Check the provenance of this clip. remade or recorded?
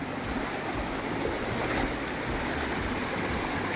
recorded